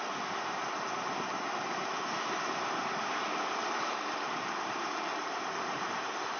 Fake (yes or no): yes